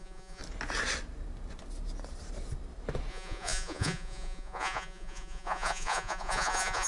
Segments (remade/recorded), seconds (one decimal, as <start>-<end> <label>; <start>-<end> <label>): 0.0-0.4 remade; 0.4-3.1 recorded; 3.1-6.9 remade